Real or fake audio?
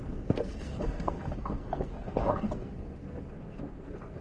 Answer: fake